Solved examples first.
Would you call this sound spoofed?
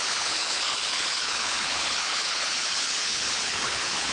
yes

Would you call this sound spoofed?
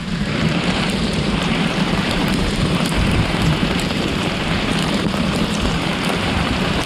yes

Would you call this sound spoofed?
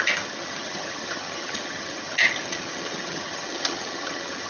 yes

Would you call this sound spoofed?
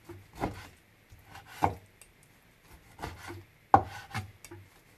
no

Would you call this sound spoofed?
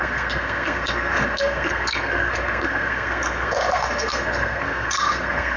yes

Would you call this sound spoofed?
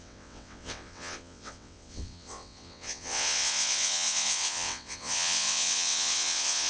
yes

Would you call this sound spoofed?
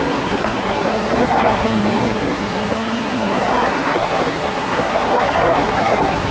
yes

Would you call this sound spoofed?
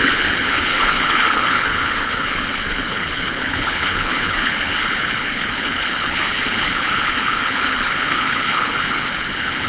yes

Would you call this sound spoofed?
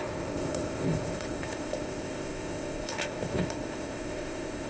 yes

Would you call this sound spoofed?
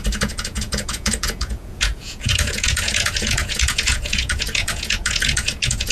yes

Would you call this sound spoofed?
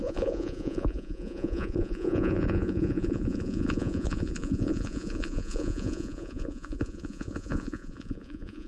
yes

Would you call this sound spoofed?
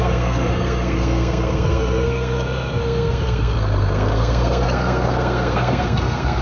yes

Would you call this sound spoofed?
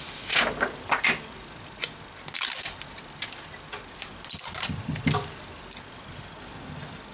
no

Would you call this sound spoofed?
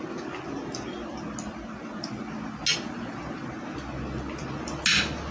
no